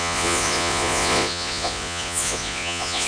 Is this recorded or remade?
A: remade